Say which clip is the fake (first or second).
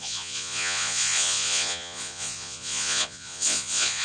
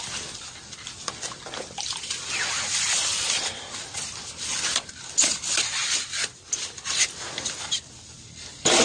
first